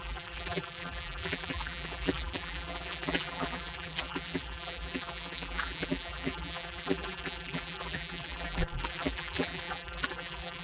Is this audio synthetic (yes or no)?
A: yes